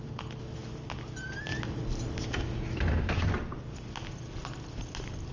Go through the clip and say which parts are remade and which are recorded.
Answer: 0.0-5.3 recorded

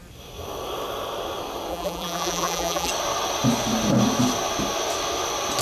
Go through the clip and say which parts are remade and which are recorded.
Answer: 0.0-1.7 recorded; 1.7-2.9 remade; 2.9-5.6 recorded

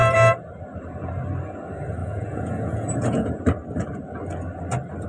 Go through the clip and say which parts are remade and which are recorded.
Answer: 0.0-2.0 recorded; 2.0-3.4 remade; 3.4-5.1 recorded

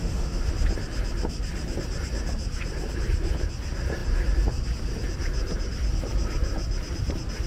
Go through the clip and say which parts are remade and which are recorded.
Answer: 0.0-0.5 remade; 0.5-7.5 recorded